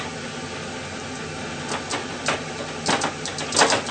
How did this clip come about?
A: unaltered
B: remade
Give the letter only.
A